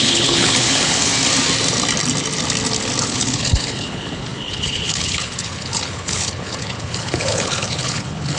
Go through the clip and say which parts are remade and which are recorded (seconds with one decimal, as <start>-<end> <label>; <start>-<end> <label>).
0.0-1.1 remade; 1.1-3.0 recorded; 3.0-8.4 remade